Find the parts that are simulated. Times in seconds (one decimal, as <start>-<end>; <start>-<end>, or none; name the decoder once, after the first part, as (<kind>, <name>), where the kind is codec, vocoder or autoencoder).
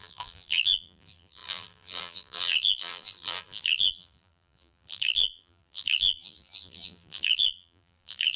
0.0-8.4 (vocoder, BigVGAN v2)